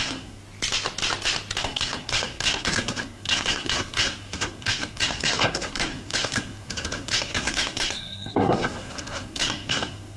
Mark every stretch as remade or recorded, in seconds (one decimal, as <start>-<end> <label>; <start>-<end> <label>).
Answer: 0.0-0.4 remade; 0.4-1.6 recorded; 1.6-10.2 remade